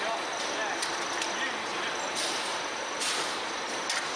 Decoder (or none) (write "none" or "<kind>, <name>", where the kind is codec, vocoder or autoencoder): none